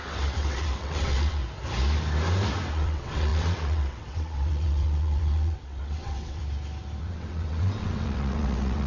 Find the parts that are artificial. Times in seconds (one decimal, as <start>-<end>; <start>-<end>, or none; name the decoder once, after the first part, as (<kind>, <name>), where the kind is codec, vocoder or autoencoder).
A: 0.0-1.4 (vocoder, WaveNeXt); 2.7-6.4; 7.0-8.9